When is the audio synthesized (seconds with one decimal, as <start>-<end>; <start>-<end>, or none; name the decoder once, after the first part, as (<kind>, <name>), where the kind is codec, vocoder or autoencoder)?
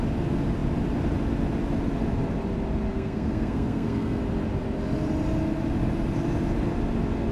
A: 2.9-4.2 (codec, SNAC)